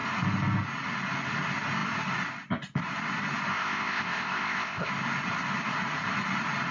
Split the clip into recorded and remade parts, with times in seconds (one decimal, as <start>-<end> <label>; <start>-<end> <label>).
0.0-3.5 recorded; 3.5-4.9 remade; 4.9-6.7 recorded

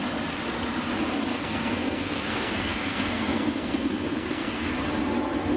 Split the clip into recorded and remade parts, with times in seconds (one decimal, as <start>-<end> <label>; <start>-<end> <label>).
0.0-1.3 recorded; 1.3-4.7 remade; 4.7-5.6 recorded

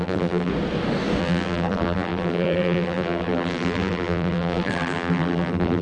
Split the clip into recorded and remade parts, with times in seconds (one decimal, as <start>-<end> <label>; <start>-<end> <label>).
0.0-0.5 remade; 0.5-1.2 recorded; 1.2-5.8 remade